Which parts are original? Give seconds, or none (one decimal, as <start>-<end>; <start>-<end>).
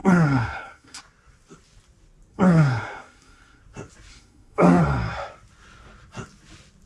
1.0-2.3; 3.6-4.1; 4.8-6.9